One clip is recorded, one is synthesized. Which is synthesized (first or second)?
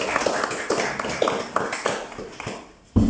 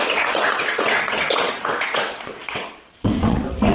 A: second